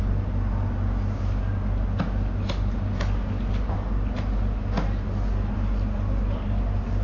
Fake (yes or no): no